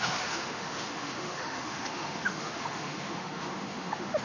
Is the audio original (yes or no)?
no